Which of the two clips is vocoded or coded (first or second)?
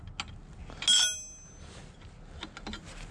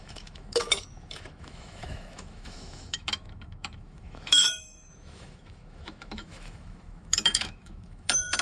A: second